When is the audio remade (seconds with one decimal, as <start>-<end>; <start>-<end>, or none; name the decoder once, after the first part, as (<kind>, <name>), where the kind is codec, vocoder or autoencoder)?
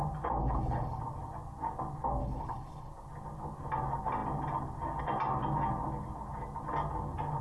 0.4-1.0 (codec, HILCodec); 2.2-2.9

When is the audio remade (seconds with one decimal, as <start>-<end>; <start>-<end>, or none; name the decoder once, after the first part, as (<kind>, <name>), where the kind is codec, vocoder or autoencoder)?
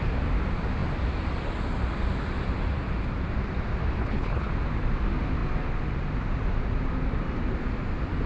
4.0-4.5 (codec, HILCodec)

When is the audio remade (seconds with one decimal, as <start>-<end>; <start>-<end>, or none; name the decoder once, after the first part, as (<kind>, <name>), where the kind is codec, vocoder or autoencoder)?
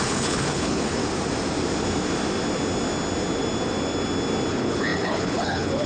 0.0-1.0 (codec, HILCodec); 4.5-5.9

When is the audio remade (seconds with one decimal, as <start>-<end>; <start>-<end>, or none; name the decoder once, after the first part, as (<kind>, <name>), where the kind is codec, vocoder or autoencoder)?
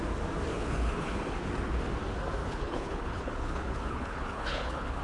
0.5-1.5 (codec, HILCodec); 2.4-5.0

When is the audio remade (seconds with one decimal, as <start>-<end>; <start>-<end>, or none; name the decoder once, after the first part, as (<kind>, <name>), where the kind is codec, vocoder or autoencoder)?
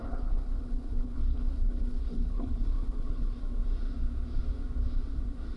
0.0-3.4 (codec, HILCodec)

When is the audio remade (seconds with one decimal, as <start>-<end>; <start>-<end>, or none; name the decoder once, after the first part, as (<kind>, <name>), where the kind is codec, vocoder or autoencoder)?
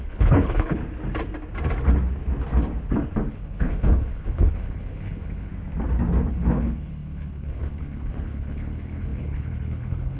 0.0-0.8 (codec, HILCodec); 3.3-5.5; 6.3-10.2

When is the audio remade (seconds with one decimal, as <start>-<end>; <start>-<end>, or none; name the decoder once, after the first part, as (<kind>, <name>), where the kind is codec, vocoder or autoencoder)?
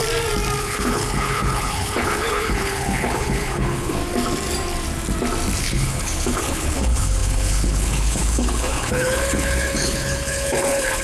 0.6-4.0 (codec, HILCodec); 5.6-11.0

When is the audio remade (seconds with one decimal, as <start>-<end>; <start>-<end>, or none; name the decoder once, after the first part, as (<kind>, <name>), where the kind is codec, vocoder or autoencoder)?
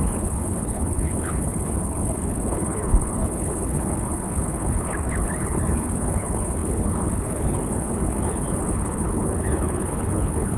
0.0-10.6 (codec, HILCodec)